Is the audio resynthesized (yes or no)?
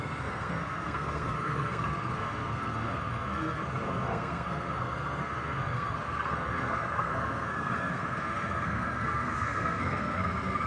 yes